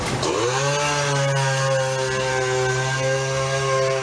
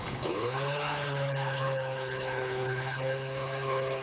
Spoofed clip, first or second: second